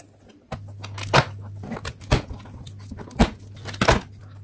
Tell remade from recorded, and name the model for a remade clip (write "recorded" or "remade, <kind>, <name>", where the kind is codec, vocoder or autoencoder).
recorded